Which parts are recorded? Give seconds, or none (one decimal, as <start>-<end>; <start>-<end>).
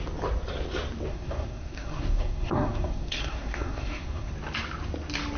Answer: 0.0-1.1; 4.3-5.4